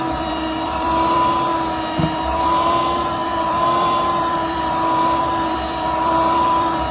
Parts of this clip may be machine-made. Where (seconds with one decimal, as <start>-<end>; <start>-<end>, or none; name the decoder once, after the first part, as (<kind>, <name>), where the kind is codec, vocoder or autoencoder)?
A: 0.0-1.5 (vocoder, BigVGAN v2); 2.0-6.9